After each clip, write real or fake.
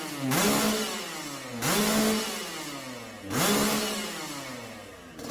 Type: real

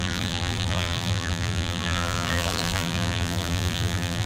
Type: fake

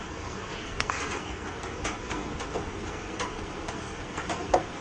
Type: fake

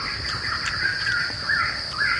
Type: real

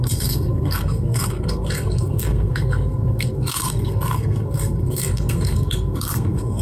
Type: fake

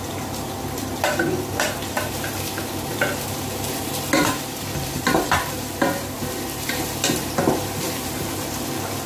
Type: fake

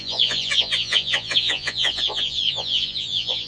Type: fake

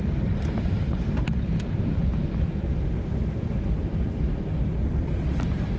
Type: real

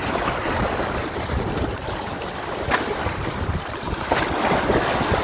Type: fake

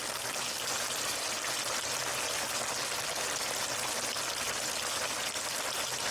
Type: real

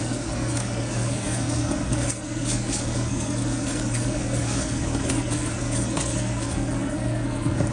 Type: fake